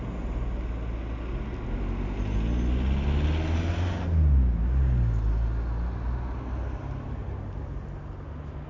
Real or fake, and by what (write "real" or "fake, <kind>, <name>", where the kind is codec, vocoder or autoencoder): real